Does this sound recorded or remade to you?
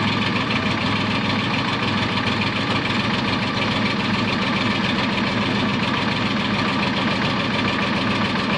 recorded